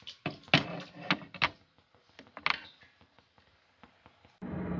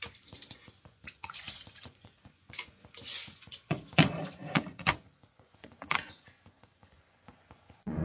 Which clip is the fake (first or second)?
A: second